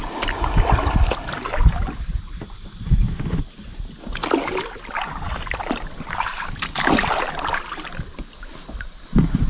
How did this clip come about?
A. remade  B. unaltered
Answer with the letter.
B